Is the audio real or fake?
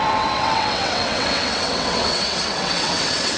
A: fake